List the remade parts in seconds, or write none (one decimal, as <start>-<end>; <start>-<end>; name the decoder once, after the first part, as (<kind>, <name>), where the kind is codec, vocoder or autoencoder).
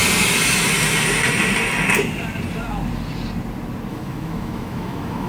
3.9-5.3 (autoencoder, DAC-VAE)